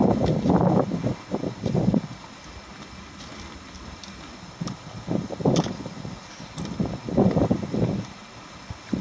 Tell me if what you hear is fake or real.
real